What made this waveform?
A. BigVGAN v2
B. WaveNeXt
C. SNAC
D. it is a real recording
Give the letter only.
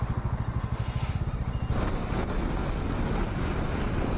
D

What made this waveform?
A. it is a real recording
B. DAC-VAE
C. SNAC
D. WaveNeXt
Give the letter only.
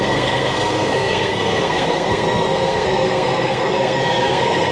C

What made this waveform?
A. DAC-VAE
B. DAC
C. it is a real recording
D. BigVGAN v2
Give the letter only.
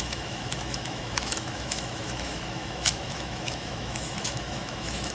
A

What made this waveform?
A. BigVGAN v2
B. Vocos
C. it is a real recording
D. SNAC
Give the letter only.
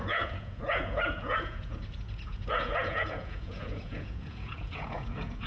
B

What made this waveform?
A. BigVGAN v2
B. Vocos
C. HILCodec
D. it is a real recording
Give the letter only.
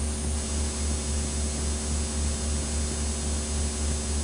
D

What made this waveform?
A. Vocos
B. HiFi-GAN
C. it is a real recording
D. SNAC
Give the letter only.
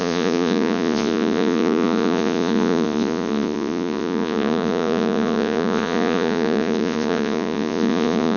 A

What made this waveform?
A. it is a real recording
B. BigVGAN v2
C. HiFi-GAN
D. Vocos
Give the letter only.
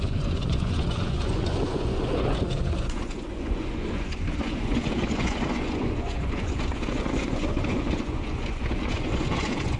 D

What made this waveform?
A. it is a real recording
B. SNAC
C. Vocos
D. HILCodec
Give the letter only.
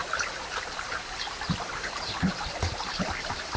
A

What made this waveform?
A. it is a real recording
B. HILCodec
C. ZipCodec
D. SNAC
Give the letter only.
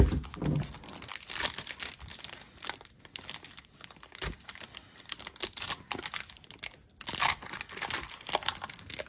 A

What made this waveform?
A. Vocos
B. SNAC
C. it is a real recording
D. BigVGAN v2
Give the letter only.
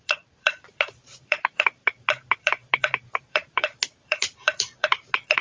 D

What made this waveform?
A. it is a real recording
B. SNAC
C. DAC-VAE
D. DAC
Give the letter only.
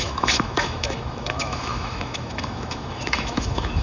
C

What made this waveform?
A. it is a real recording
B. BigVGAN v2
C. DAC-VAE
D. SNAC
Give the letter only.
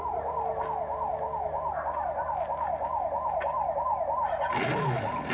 A